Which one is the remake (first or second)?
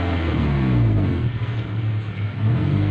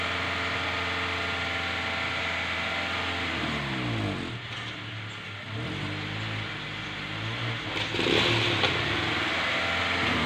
first